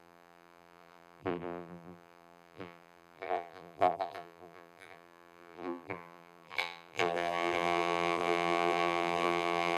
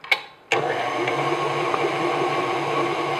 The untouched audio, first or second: second